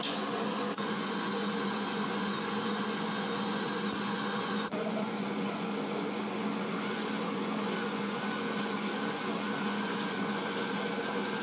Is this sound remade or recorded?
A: remade